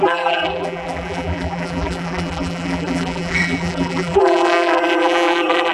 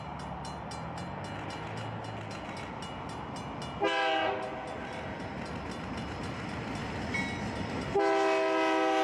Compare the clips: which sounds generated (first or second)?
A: first